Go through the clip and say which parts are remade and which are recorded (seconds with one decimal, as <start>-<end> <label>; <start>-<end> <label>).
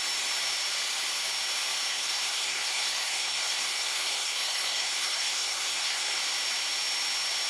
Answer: 0.0-1.9 recorded; 1.9-6.2 remade; 6.2-7.5 recorded